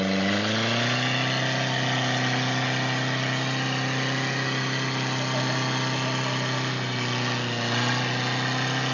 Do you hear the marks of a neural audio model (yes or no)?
no